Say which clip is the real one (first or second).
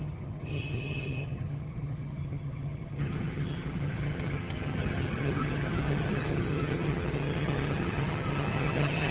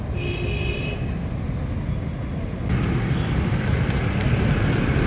second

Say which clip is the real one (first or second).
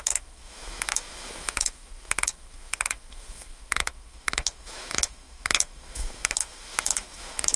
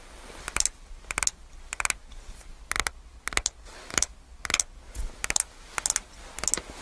second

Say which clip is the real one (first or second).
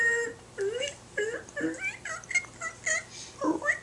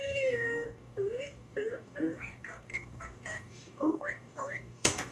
first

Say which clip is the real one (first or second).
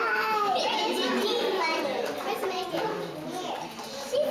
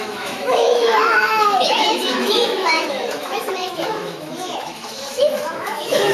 first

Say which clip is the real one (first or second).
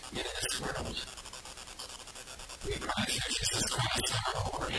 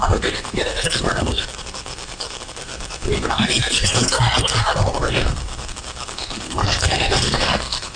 first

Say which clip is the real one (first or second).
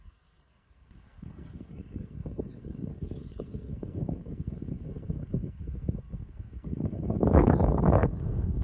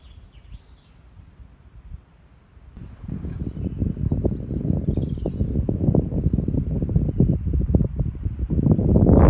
second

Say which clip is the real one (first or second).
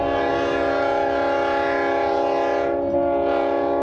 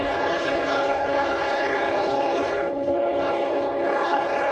first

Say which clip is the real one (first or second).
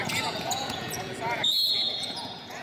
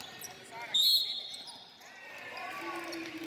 second